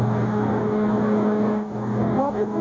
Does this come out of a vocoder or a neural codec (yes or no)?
yes